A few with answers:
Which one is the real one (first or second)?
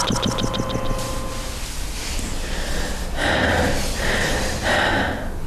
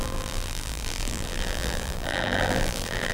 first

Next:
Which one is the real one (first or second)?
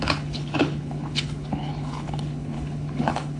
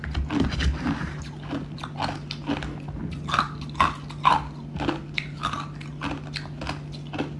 second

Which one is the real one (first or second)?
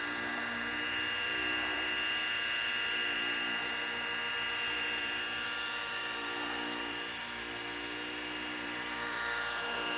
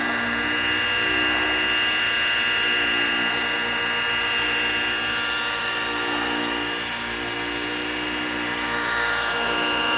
second